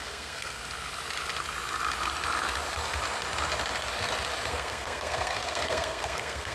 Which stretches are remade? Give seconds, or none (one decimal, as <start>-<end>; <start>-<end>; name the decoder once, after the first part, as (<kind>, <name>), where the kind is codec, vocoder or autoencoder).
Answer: 0.0-0.6 (codec, SNAC); 4.5-6.5